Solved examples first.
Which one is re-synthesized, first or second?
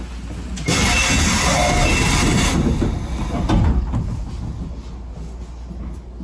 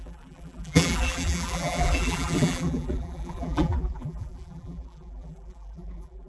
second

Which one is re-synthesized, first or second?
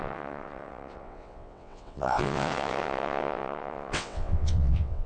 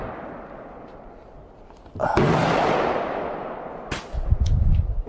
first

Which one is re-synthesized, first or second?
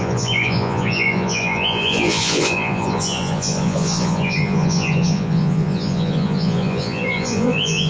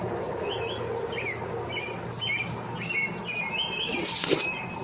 first